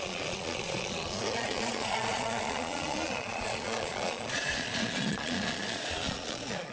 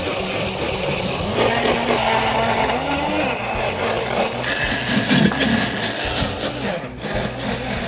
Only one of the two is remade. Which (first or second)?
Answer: first